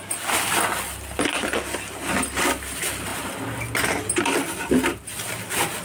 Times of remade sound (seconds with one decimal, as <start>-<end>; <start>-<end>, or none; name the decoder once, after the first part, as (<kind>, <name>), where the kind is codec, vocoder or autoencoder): none